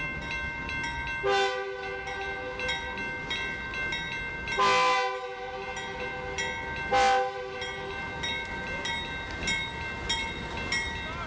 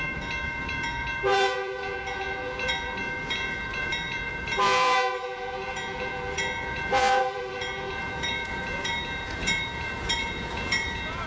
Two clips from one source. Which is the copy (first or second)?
second